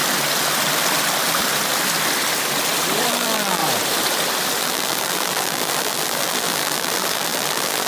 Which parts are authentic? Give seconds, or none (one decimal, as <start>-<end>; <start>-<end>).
0.0-3.1; 3.6-4.6